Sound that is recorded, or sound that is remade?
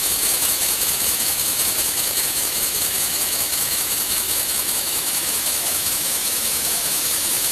remade